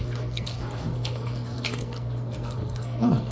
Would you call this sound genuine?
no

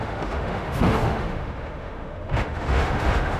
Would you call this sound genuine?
no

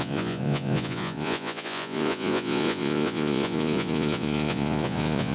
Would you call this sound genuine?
no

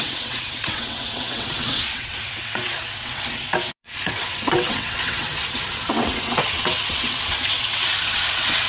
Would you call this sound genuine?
no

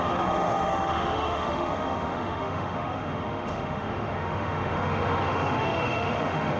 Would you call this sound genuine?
no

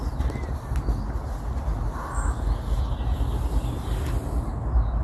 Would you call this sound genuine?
yes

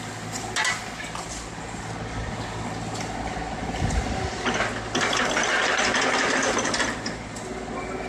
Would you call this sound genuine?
yes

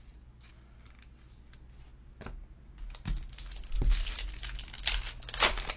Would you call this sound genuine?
yes